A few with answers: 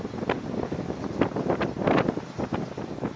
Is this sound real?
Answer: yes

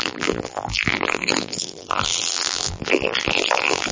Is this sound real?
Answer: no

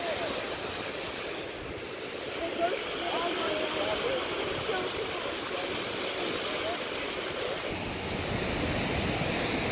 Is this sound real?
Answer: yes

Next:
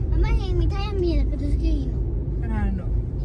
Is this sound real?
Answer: yes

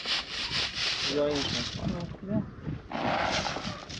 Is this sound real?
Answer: yes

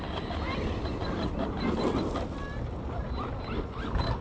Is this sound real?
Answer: yes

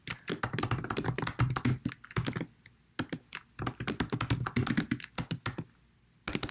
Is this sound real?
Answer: yes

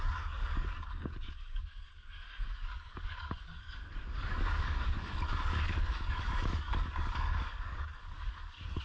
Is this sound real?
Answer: no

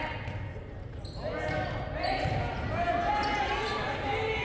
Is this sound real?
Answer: yes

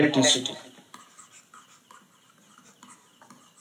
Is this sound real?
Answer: yes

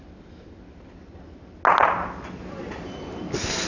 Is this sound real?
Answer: yes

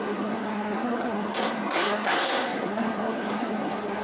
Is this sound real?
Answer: no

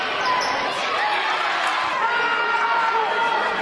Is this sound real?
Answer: yes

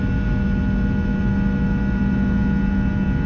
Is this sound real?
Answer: yes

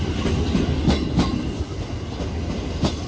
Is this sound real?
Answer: yes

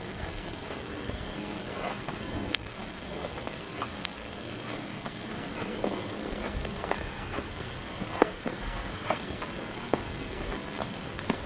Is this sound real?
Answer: no